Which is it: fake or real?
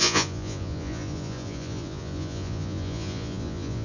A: fake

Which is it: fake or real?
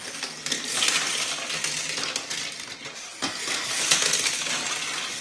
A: real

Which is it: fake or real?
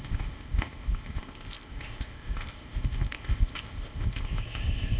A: fake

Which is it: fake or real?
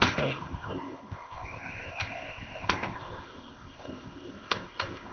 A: fake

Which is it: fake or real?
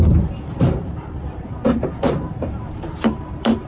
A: fake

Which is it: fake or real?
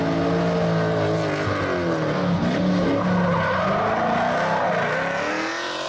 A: real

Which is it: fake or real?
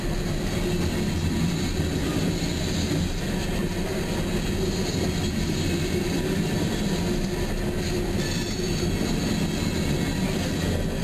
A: real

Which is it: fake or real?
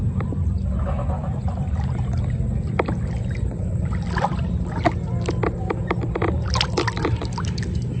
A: real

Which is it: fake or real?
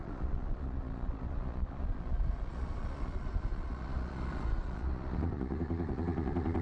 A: fake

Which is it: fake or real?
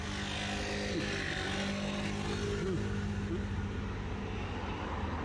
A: real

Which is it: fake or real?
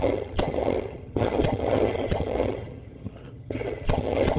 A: fake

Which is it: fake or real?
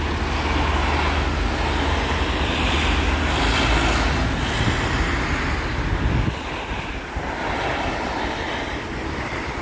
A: real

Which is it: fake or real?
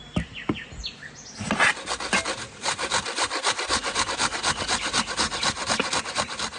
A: real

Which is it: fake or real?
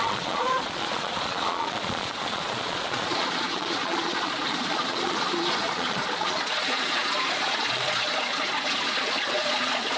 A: fake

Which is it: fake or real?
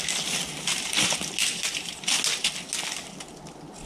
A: real